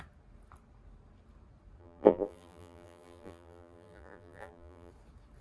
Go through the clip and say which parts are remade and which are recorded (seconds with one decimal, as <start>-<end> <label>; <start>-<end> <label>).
0.0-1.8 recorded; 1.8-4.9 remade; 4.9-5.4 recorded